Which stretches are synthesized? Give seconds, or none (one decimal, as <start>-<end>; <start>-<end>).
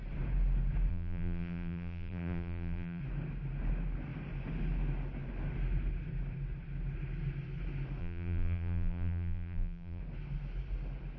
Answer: 0.9-3.0; 8.0-10.0